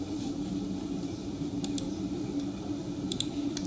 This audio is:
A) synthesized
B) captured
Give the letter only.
B